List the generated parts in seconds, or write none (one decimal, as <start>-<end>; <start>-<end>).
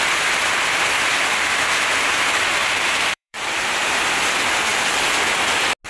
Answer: 2.6-3.7